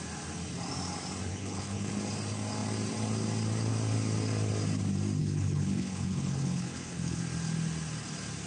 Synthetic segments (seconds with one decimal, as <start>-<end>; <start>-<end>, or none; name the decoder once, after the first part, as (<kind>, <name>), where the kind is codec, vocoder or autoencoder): 1.3-1.9 (codec, HILCodec); 5.2-7.2